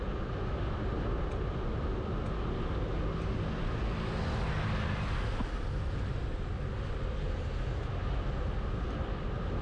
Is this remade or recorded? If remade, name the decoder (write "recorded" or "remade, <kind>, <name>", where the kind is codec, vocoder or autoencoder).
recorded